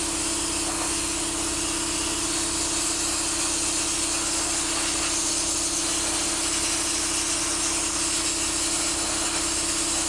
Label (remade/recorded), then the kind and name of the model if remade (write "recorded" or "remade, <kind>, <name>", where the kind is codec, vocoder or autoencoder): recorded